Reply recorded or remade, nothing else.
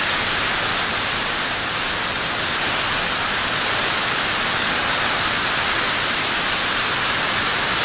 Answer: recorded